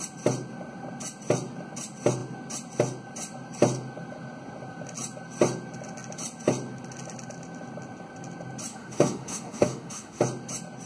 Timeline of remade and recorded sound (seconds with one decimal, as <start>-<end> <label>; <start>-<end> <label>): 0.0-8.7 recorded; 8.7-10.2 remade; 10.2-10.9 recorded

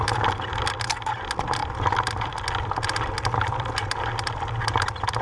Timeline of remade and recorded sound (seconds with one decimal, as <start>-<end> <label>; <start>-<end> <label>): 0.0-5.2 recorded

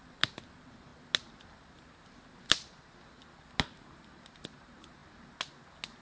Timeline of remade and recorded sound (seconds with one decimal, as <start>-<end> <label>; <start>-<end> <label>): 0.0-6.0 recorded